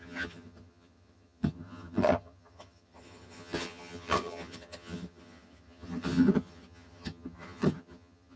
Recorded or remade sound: remade